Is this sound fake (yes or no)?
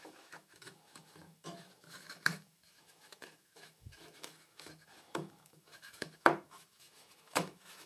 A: yes